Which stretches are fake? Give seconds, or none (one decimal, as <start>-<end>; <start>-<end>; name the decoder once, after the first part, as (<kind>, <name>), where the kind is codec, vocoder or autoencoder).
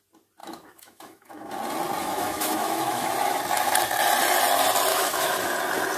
0.4-1.5 (autoencoder, DAC-VAE); 2.0-3.1; 4.9-5.4